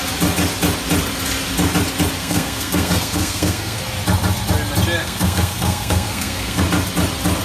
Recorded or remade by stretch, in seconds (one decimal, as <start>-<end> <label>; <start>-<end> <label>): 0.0-2.2 recorded; 2.2-3.8 remade; 3.8-5.0 recorded; 5.0-6.6 remade; 6.6-7.4 recorded